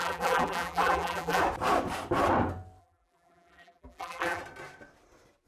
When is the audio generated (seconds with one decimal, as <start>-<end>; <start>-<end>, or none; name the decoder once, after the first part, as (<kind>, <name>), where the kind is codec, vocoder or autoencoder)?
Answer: 0.0-1.4 (vocoder, BigVGAN v2); 2.8-4.4